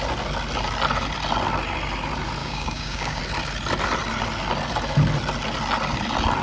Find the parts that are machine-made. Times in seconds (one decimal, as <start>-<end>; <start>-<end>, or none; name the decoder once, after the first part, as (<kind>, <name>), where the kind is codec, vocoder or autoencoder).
2.4-3.2 (codec, DAC)